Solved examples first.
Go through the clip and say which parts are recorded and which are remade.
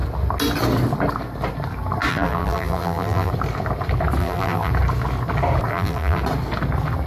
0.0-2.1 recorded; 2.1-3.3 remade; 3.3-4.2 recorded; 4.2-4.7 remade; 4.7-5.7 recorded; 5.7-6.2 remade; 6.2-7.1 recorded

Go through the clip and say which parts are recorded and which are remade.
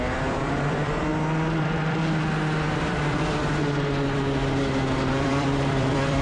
0.0-1.1 remade; 1.1-1.6 recorded; 1.6-3.6 remade; 3.6-5.1 recorded; 5.1-6.2 remade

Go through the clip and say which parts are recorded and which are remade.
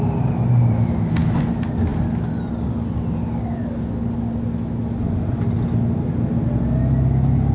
0.0-7.5 recorded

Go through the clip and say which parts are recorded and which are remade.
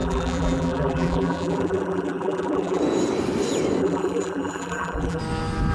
0.0-2.8 remade; 2.8-3.8 recorded; 3.8-5.2 remade; 5.2-5.7 recorded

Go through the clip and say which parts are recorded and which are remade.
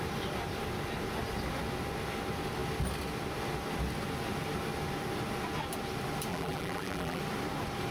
0.0-6.3 recorded; 6.3-7.2 remade; 7.2-7.9 recorded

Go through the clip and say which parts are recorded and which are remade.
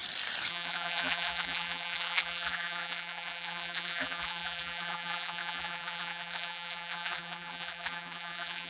0.0-0.5 recorded; 0.5-8.7 remade